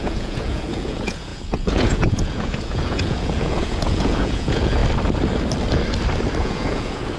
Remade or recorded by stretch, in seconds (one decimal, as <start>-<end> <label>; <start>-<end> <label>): 0.0-4.8 remade; 4.8-6.4 recorded; 6.4-7.2 remade